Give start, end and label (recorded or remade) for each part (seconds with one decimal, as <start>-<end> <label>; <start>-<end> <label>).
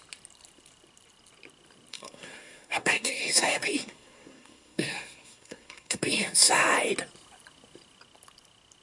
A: 0.0-1.9 recorded; 1.9-6.5 remade; 6.5-8.8 recorded